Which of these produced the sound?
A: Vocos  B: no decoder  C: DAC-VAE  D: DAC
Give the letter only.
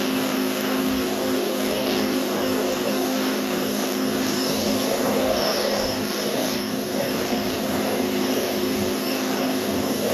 D